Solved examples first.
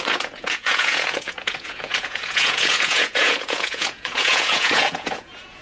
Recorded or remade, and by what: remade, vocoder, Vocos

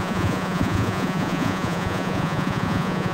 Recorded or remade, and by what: remade, vocoder, Vocos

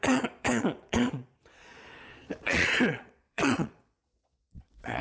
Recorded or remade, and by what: remade, vocoder, Vocos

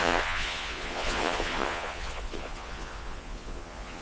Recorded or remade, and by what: remade, vocoder, Vocos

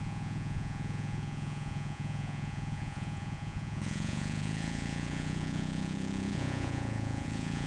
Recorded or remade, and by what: remade, vocoder, Vocos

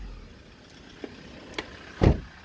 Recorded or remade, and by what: recorded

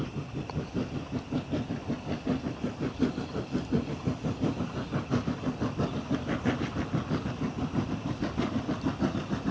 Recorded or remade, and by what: recorded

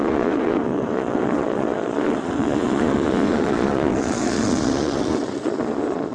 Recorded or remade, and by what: remade, vocoder, Vocos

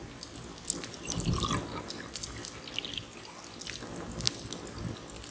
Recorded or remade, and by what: recorded